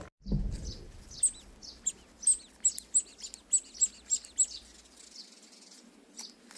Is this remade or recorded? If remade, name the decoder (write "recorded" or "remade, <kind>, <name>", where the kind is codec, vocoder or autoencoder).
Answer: recorded